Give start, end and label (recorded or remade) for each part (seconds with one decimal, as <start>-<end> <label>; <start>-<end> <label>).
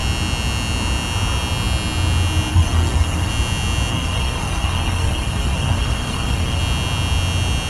0.0-2.5 recorded; 2.5-3.3 remade; 3.3-3.9 recorded; 3.9-6.6 remade; 6.6-7.7 recorded